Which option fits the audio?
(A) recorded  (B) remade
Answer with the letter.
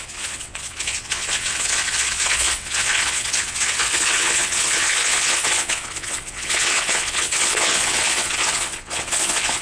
B